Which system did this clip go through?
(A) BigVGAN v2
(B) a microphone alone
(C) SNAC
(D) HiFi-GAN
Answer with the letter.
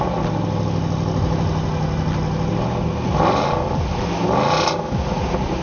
B